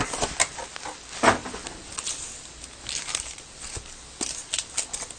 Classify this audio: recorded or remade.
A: recorded